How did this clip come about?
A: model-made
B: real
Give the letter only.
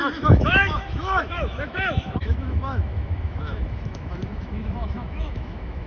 A